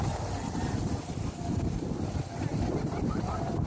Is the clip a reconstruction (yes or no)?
no